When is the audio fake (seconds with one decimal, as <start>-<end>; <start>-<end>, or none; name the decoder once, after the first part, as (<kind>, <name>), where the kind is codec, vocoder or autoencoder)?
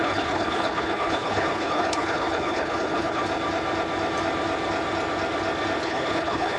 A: 0.0-3.2 (codec, HILCodec); 5.8-6.6